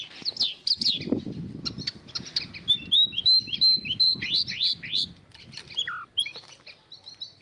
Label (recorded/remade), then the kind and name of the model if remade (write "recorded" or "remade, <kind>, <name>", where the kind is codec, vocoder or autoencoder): recorded